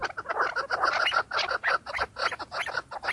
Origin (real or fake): real